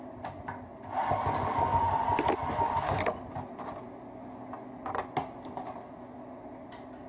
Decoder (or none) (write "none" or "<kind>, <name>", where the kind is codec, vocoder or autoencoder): none